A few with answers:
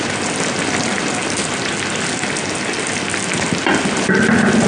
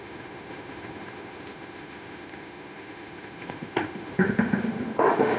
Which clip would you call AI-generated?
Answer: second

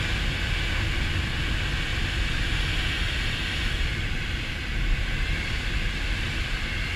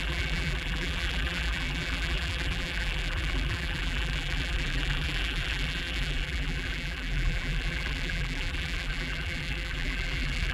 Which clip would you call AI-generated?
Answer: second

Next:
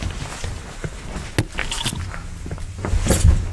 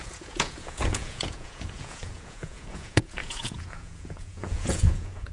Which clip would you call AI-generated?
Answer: second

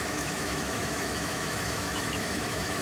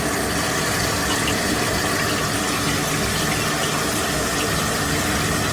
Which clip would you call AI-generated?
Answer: first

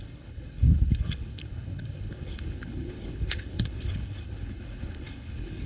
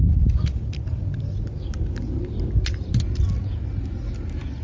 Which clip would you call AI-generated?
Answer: first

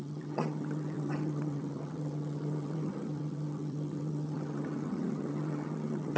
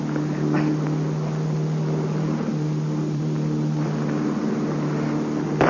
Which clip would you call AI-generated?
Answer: first